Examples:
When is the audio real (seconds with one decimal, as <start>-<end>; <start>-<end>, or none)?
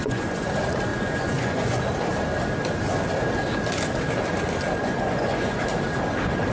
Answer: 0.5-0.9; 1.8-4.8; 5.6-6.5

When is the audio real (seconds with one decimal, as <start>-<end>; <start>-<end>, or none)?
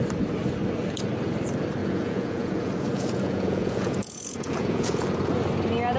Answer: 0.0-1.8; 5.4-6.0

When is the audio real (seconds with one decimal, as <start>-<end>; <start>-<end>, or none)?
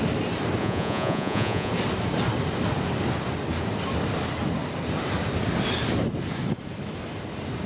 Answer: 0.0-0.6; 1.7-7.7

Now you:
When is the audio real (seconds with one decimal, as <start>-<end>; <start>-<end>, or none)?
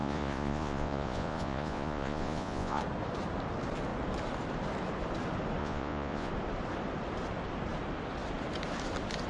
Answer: 2.8-5.6; 6.3-9.3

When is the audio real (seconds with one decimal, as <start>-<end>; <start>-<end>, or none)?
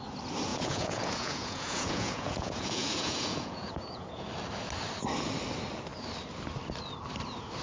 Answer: 0.0-0.5; 4.3-7.6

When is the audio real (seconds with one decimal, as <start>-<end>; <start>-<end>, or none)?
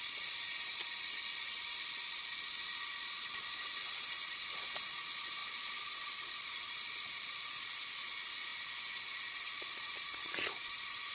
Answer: 8.5-9.1